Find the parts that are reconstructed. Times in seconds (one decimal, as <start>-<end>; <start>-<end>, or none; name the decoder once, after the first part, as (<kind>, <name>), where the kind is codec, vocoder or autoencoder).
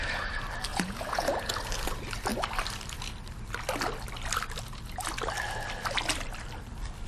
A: 0.7-1.5 (vocoder, Vocos)